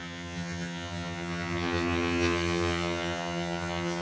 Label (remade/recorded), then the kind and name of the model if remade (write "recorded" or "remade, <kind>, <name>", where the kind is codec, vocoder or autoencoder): remade, vocoder, HiFi-GAN